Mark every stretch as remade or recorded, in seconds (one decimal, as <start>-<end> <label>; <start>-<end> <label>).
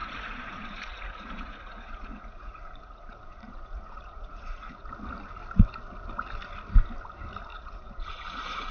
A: 0.0-4.9 remade; 4.9-7.5 recorded; 7.5-8.7 remade